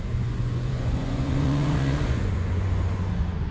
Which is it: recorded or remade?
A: remade